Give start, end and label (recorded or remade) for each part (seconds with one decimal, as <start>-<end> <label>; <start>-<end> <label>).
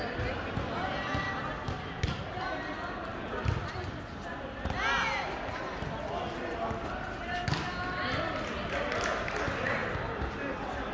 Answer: 0.0-10.9 recorded